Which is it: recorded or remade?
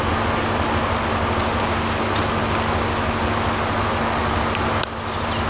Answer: recorded